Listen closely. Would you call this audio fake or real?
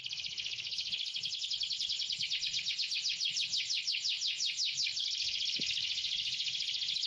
fake